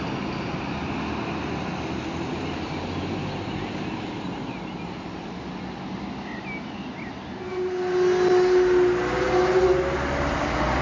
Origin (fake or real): real